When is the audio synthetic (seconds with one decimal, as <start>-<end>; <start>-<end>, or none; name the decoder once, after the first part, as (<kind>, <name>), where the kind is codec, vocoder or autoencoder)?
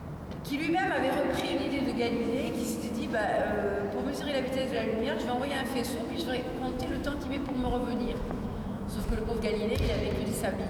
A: 0.8-2.9 (autoencoder, DAC-VAE); 4.6-9.4